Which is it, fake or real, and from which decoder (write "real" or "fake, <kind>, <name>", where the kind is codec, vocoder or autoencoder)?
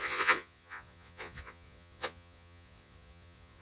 fake, vocoder, Vocos